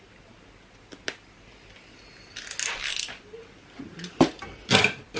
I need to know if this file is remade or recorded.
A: recorded